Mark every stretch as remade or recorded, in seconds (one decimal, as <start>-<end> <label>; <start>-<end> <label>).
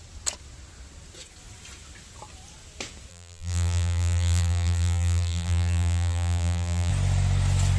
0.0-3.1 recorded; 3.1-6.9 remade; 6.9-7.8 recorded